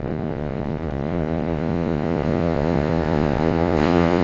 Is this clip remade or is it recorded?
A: remade